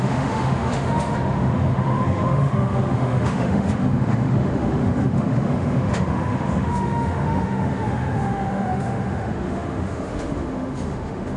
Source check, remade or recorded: remade